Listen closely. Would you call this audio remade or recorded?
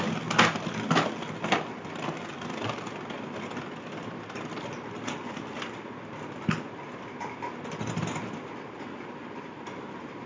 recorded